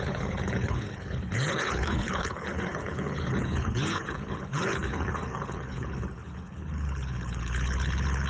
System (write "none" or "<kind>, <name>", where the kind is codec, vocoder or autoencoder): codec, HILCodec